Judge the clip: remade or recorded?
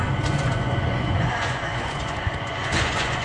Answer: remade